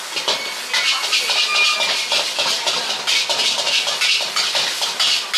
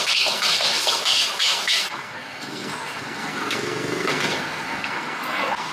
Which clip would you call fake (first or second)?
second